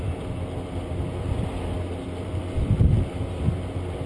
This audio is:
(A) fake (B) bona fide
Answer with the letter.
B